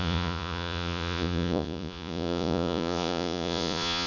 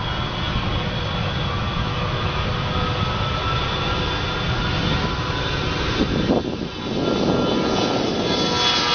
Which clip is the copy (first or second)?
first